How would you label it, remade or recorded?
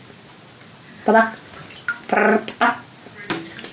recorded